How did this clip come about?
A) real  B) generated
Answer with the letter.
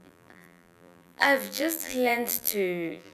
B